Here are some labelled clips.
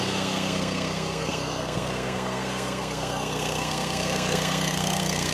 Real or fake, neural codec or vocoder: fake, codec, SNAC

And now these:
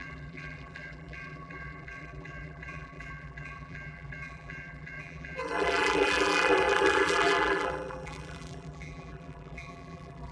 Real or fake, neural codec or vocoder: fake, vocoder, BigVGAN v2